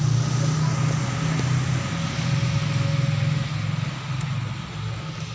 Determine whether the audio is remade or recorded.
recorded